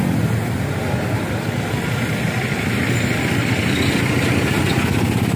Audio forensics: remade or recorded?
recorded